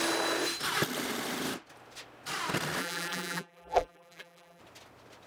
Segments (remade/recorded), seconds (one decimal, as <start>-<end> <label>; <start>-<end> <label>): 0.0-2.8 recorded; 2.8-4.6 remade; 4.6-5.3 recorded